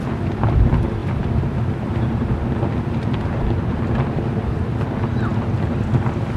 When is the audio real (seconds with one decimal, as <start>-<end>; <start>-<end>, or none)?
0.0-6.4